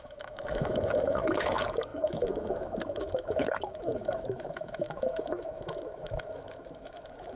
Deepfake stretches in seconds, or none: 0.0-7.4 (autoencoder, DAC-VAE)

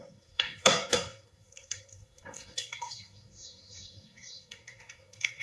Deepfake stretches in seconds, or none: 0.0-5.4 (codec, SNAC)

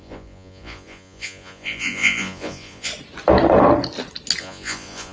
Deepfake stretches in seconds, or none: 0.0-2.9 (vocoder, Vocos); 4.4-5.1

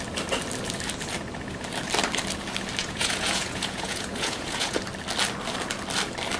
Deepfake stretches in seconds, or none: 2.8-4.8 (vocoder, Vocos)

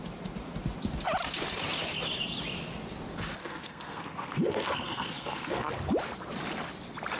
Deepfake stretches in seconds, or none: 3.4-5.7 (codec, SNAC)

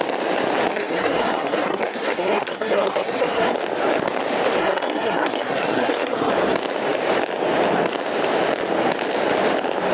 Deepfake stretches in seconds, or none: 0.7-3.6 (codec, SNAC); 4.6-6.3

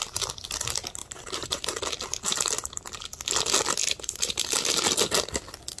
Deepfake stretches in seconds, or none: 1.0-1.8 (vocoder, BigVGAN v2); 3.8-4.4